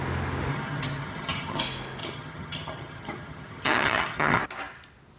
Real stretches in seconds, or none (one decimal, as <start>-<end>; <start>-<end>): 0.0-0.5; 1.6-2.0; 4.4-5.2